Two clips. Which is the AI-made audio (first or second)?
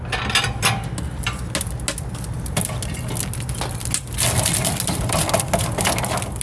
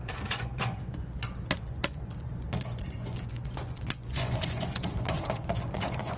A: second